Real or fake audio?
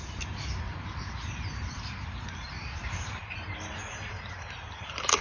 fake